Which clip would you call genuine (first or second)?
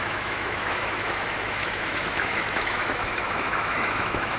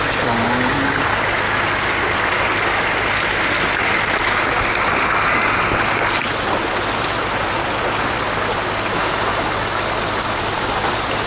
second